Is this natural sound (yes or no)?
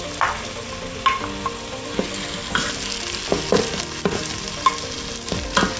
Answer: yes